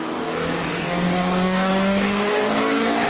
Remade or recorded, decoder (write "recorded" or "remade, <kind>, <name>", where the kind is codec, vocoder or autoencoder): remade, codec, DAC